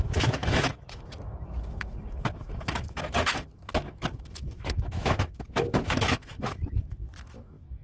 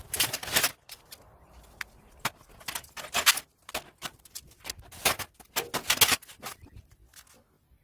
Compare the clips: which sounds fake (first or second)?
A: first